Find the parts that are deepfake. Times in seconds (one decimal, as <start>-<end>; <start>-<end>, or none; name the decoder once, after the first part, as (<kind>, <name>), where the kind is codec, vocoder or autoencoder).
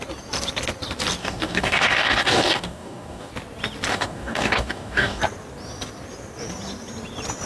1.2-3.3 (codec, DAC); 3.9-5.2